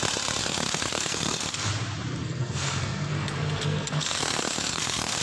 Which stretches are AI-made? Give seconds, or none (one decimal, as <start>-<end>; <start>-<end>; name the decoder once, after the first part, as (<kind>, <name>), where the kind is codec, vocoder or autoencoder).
0.4-1.7 (codec, SNAC); 2.2-5.2